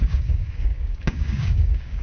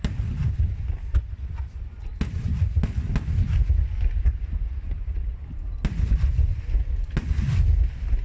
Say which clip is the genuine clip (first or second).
second